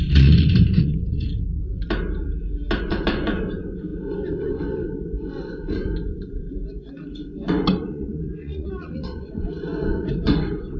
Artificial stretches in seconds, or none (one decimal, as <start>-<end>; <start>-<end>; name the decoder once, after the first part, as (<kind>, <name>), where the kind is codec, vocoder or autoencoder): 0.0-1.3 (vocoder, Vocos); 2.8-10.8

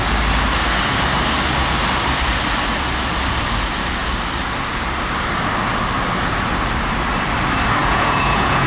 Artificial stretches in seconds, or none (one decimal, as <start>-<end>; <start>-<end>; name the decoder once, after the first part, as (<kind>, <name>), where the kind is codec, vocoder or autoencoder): 7.8-8.7 (vocoder, Vocos)

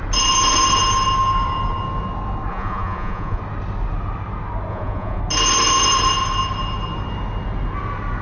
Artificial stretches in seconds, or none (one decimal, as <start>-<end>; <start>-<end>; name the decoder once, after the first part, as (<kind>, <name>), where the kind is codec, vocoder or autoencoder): 2.5-3.4 (vocoder, Vocos); 4.7-5.2

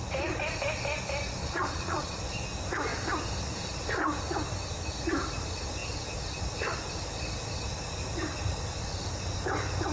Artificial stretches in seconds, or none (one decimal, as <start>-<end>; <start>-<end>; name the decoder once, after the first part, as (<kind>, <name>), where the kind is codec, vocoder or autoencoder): 1.4-2.2 (vocoder, Vocos)